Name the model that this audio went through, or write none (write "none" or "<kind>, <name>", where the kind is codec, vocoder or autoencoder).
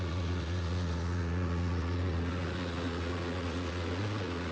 vocoder, Vocos